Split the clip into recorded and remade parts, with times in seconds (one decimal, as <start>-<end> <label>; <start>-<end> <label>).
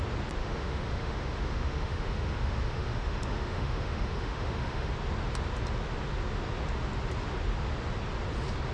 0.0-0.4 recorded; 0.4-4.9 remade; 4.9-8.7 recorded